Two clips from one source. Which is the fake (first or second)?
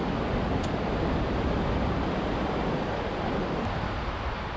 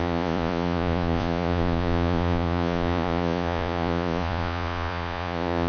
second